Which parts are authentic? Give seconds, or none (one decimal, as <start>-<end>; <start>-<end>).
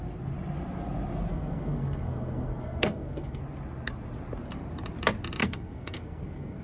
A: 0.0-1.3; 3.4-5.4